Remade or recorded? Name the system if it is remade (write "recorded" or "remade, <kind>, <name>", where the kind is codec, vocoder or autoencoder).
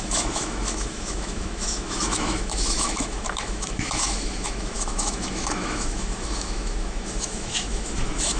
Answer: remade, autoencoder, DAC-VAE